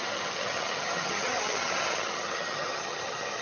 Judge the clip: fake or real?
fake